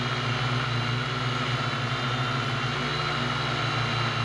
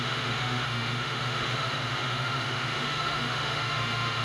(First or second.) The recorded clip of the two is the first